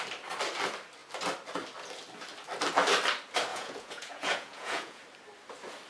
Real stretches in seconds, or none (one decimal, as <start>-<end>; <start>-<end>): 0.0-3.5; 5.0-5.9